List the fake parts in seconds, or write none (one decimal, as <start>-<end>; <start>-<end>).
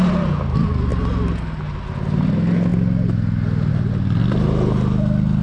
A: none